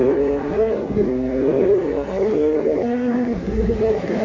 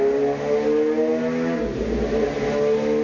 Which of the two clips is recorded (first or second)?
second